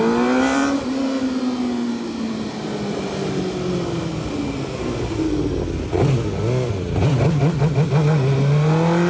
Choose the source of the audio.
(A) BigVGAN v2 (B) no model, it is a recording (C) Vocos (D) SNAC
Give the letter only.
B